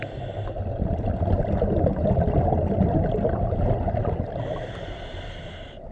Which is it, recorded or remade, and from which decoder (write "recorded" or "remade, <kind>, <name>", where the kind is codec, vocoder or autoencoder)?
recorded